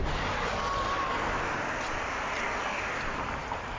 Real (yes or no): yes